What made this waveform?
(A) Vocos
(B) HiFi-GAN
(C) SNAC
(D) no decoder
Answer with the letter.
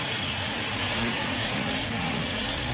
A